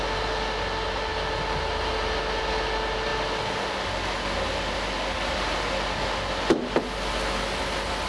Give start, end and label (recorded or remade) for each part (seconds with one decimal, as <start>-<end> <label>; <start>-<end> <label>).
0.0-8.1 recorded